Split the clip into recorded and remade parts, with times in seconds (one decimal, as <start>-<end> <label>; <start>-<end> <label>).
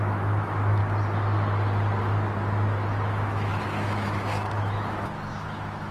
0.0-0.8 remade; 0.8-3.1 recorded; 3.1-5.9 remade